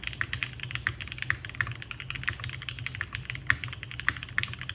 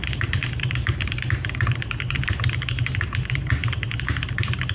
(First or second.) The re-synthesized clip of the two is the second